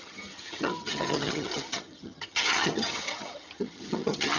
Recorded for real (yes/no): no